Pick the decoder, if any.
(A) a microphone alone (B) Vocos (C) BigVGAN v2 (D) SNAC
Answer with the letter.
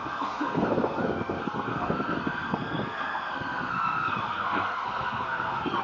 D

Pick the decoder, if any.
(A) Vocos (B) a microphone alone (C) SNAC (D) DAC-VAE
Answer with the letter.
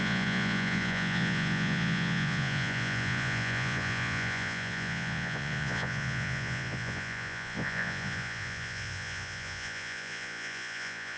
A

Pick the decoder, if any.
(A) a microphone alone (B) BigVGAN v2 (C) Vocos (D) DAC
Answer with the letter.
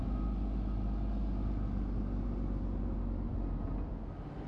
A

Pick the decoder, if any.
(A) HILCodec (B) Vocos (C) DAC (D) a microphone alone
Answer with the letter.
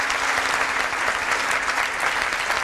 D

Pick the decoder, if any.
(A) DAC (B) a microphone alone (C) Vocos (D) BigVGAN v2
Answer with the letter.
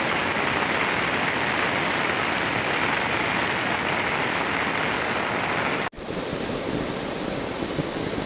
B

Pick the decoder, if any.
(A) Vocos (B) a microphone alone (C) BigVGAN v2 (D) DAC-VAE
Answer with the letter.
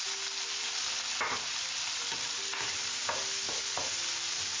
B